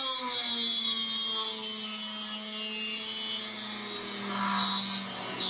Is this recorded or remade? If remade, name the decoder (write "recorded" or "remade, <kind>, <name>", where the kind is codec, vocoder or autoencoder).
recorded